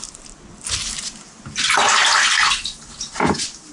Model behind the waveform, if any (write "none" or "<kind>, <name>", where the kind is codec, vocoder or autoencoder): none